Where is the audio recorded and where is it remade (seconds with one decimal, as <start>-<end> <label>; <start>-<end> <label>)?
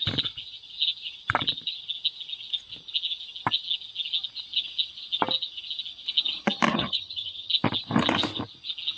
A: 0.0-6.7 recorded; 6.7-7.5 remade; 7.5-9.0 recorded